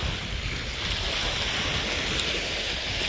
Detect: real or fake real